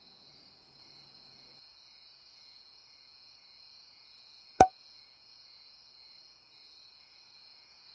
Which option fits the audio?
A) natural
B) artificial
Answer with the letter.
B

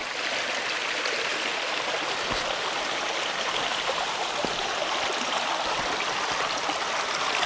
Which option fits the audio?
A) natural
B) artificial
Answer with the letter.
A